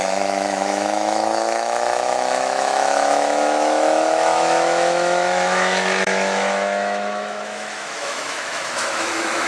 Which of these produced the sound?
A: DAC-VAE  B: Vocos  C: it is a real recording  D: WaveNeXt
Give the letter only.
A